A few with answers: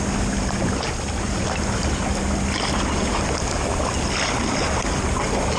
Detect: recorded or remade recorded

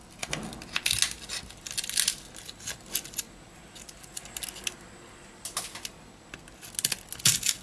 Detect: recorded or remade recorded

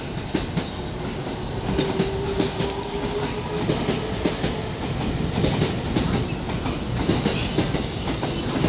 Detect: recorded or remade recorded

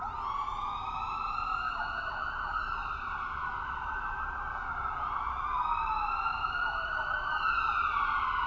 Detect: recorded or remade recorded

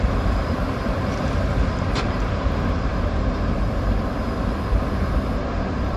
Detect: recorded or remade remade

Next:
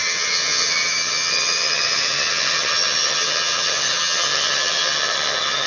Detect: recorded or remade remade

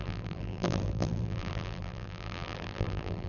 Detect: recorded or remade remade